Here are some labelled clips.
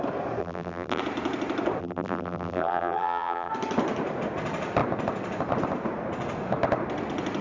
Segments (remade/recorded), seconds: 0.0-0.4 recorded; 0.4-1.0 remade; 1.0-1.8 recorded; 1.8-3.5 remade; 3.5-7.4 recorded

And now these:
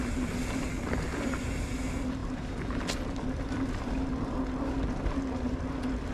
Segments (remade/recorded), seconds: 0.0-6.1 recorded

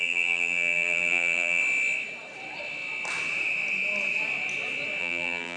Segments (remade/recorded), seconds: 0.0-1.6 remade; 1.6-5.0 recorded; 5.0-5.6 remade